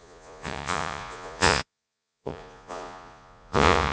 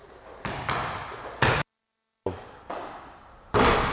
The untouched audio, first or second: second